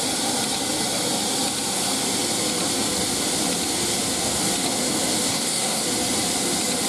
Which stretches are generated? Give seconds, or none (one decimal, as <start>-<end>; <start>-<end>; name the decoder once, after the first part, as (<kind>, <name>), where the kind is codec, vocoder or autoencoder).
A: 5.3-5.8 (codec, SNAC)